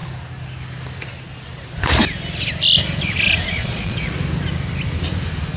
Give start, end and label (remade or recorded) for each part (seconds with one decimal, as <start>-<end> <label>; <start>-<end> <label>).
0.0-3.6 recorded; 3.6-4.1 remade; 4.1-5.6 recorded